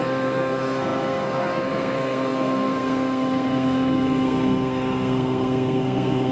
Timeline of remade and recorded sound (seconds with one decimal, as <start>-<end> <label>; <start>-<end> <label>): 0.0-6.3 remade